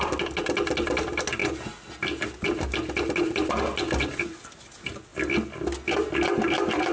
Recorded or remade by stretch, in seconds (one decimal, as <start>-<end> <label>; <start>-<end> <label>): 0.0-6.9 recorded